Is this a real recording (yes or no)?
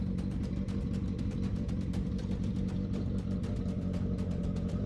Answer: no